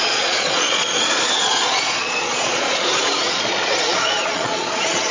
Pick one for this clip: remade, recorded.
remade